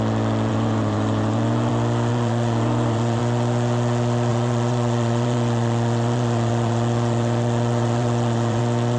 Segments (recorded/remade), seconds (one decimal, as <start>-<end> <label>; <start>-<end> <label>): 0.0-0.5 recorded; 0.5-1.7 remade; 1.7-2.1 recorded; 2.1-3.2 remade; 3.2-4.3 recorded; 4.3-8.6 remade; 8.6-9.0 recorded